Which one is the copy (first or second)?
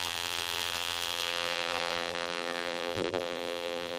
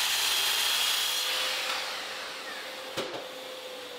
first